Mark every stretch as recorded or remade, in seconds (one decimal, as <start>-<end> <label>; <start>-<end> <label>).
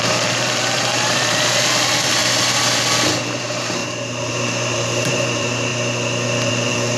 0.0-2.2 remade; 2.2-3.4 recorded; 3.4-3.8 remade; 3.8-4.3 recorded; 4.3-5.7 remade; 5.7-6.5 recorded; 6.5-7.0 remade